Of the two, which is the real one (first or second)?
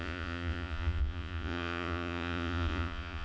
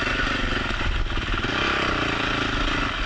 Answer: second